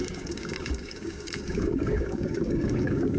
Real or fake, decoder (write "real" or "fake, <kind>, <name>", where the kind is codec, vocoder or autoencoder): fake, codec, DAC